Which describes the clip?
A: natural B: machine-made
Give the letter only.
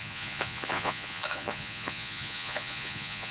B